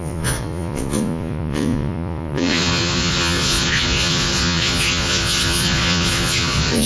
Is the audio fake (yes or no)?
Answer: yes